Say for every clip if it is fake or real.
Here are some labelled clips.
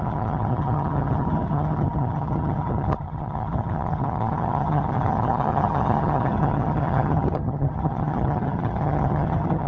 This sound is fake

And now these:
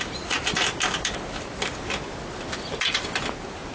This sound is real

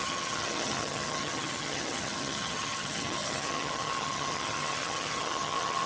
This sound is fake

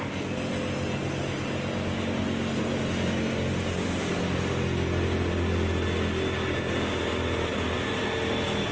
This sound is real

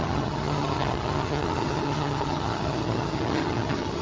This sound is fake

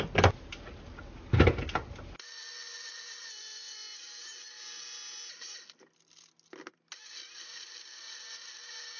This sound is real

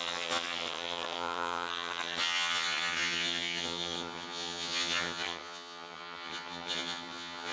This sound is fake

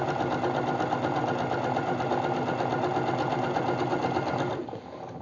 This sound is real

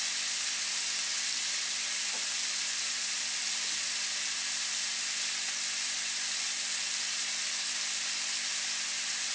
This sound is real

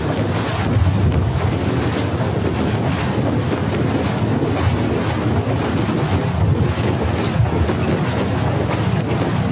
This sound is real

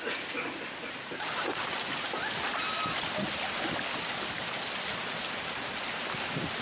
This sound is real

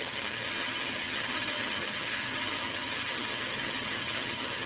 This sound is fake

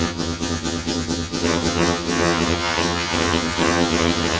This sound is fake